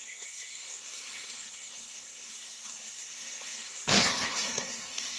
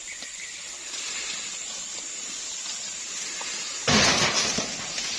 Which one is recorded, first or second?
second